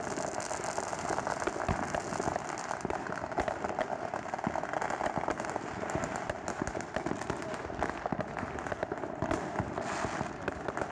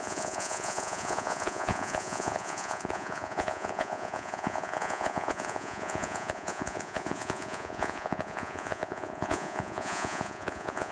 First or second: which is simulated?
second